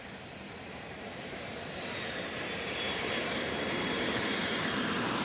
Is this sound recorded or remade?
remade